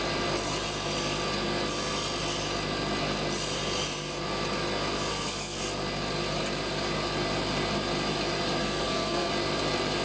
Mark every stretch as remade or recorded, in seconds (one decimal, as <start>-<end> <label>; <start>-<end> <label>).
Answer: 0.0-5.1 recorded; 5.1-5.6 remade; 5.6-8.6 recorded; 8.6-9.3 remade; 9.3-10.0 recorded